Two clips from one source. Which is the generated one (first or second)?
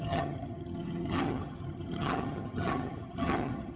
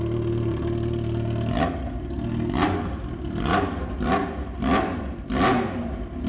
first